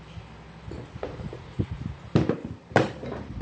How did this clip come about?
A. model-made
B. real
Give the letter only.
B